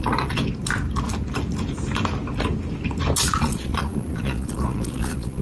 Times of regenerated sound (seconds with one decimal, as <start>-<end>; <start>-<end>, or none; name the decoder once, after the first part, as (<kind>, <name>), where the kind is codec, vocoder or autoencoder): 0.0-0.4 (vocoder, Vocos); 3.2-5.4